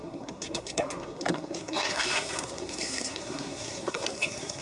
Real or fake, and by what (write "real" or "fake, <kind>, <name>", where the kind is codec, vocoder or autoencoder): fake, codec, SNAC